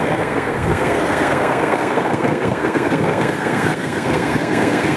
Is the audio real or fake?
fake